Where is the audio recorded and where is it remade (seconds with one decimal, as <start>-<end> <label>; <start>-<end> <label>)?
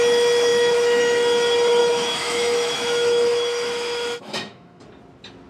0.0-0.5 recorded; 0.5-1.0 remade; 1.0-1.8 recorded; 1.8-4.8 remade; 4.8-5.5 recorded